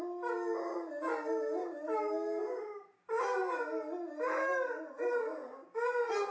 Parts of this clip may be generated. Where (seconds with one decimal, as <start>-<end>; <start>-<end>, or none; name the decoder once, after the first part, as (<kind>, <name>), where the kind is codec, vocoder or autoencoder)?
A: 1.6-2.4 (autoencoder, DAC-VAE)